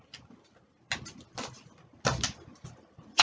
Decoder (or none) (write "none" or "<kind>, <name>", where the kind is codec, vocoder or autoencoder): none